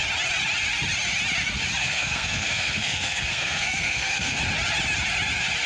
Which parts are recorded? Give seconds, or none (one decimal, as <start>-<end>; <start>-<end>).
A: 0.0-1.8; 4.4-5.7